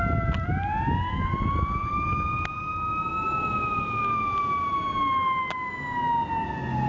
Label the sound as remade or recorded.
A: recorded